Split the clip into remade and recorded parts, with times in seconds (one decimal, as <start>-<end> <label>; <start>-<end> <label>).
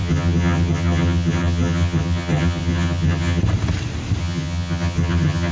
0.0-3.4 remade; 3.4-4.2 recorded; 4.2-5.5 remade